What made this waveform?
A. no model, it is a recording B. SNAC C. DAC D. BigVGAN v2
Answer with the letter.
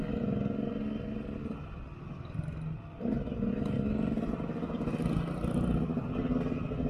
A